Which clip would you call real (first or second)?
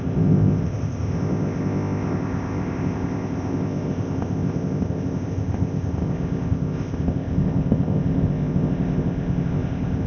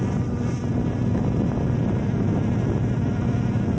second